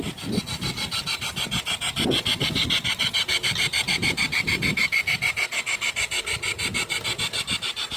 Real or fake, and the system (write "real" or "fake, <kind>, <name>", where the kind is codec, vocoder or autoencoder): real